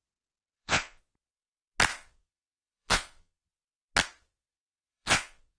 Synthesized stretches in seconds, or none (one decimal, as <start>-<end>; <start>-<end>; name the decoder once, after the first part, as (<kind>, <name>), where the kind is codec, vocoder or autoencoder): 0.4-1.0 (vocoder, WaveNeXt); 1.9-3.5; 4.5-5.6